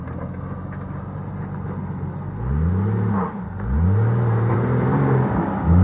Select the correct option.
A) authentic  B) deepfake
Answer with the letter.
A